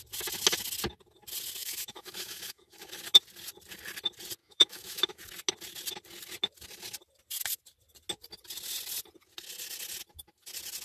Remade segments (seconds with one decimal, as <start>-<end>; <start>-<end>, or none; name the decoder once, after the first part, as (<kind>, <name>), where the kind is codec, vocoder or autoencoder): 1.6-2.9 (autoencoder, DAC-VAE); 4.4-5.2